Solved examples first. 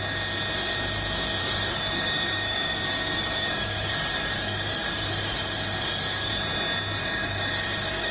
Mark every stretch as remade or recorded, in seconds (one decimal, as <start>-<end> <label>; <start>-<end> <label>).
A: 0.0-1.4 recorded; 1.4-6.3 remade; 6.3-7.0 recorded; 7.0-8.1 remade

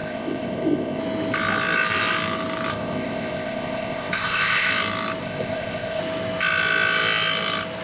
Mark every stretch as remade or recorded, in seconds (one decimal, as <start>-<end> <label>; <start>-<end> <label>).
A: 0.0-1.0 remade; 1.0-2.7 recorded; 2.7-4.7 remade; 4.7-5.2 recorded; 5.2-6.0 remade; 6.0-7.8 recorded

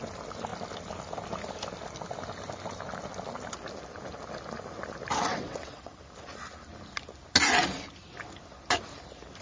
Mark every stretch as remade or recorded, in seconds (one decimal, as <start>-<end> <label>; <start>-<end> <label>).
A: 0.0-5.3 recorded; 5.3-6.0 remade; 6.0-9.4 recorded